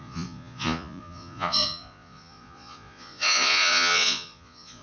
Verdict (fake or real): fake